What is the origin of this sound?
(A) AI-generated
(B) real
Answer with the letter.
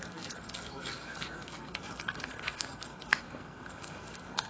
A